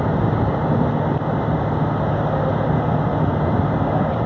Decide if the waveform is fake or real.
real